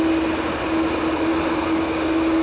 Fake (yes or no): no